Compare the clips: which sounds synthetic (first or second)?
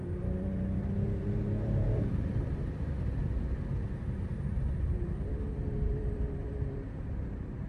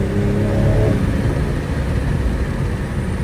first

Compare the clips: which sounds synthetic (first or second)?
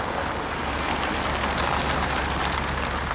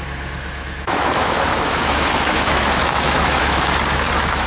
second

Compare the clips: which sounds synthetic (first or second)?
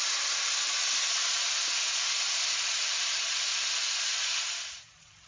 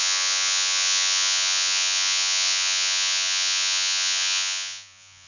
second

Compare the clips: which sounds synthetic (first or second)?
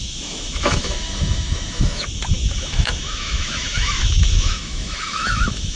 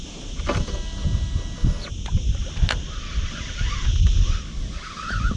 first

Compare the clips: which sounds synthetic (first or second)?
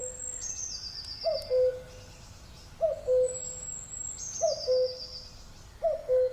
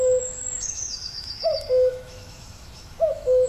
second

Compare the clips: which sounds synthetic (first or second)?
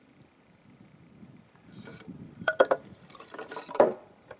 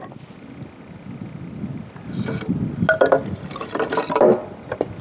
first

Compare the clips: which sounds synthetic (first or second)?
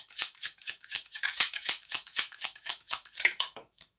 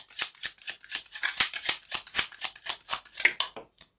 first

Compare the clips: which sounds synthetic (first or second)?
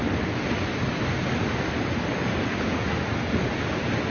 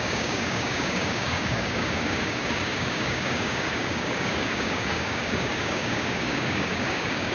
second